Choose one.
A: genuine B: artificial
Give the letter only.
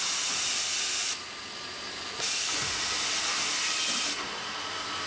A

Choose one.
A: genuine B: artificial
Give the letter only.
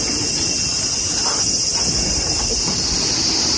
A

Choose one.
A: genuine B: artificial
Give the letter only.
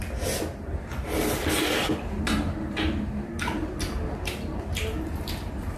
A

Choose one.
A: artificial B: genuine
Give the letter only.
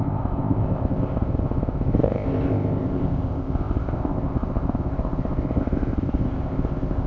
A